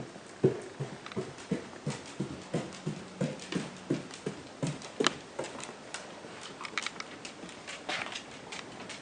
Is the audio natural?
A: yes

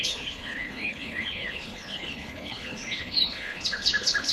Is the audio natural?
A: no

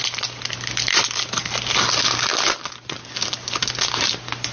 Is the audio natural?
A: yes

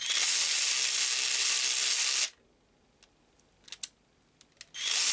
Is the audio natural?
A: yes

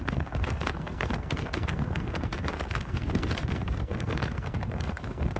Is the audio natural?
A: no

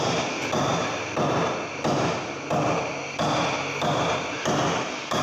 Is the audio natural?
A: yes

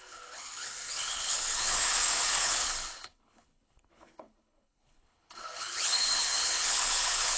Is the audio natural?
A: no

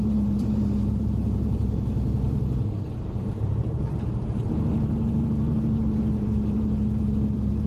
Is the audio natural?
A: no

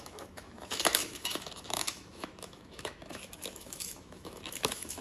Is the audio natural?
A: no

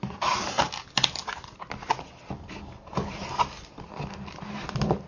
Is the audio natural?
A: yes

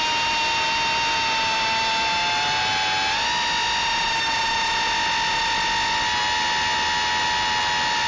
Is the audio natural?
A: yes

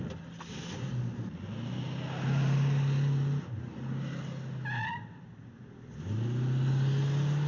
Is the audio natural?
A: yes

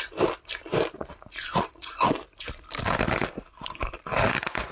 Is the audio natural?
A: yes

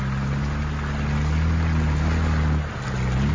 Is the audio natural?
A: yes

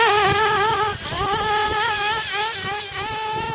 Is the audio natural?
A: yes